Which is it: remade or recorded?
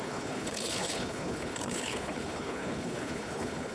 remade